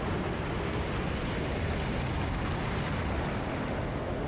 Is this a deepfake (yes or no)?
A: no